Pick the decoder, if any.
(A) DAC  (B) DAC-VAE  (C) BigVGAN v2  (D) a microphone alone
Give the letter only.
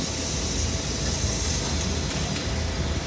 D